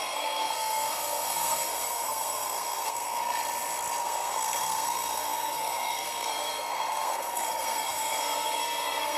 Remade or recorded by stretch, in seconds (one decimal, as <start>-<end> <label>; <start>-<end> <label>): 0.0-3.4 remade; 3.4-4.0 recorded; 4.0-9.2 remade